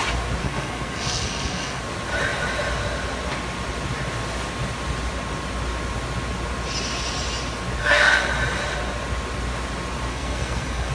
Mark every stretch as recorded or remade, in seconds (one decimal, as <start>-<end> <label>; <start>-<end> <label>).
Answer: 0.0-0.4 recorded; 0.4-1.8 remade; 1.8-7.8 recorded; 7.8-8.3 remade; 8.3-10.1 recorded; 10.1-10.9 remade